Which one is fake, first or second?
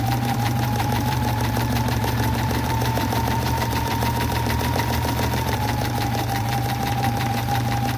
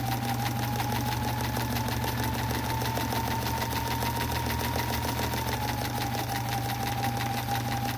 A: first